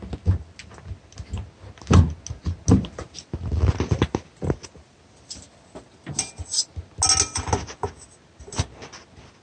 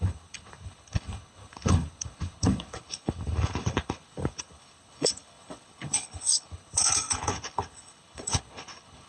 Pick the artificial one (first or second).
second